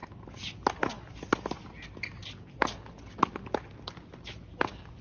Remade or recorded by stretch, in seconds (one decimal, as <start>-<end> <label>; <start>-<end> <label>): 0.0-5.0 recorded